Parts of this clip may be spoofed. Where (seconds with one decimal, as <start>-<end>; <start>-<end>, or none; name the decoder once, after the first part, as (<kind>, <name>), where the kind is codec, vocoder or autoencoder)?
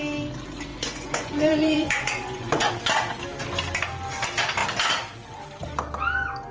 0.7-2.7 (vocoder, Vocos)